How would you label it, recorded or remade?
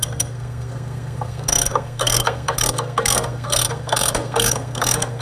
remade